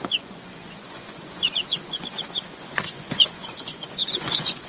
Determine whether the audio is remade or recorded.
remade